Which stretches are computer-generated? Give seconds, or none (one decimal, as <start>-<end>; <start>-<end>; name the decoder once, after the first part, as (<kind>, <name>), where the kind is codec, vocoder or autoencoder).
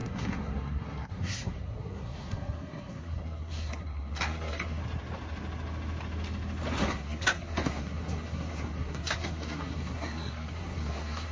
0.0-4.8 (codec, SNAC); 6.8-11.3